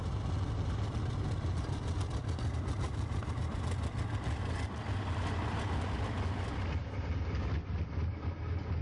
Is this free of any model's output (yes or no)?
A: yes